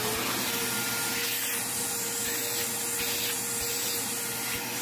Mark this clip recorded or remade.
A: recorded